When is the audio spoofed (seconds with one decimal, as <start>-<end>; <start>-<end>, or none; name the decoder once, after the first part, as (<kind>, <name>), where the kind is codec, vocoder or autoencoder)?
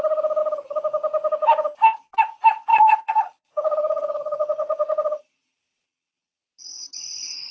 2.7-6.4 (vocoder, Vocos)